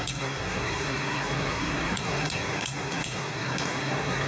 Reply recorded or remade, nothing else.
remade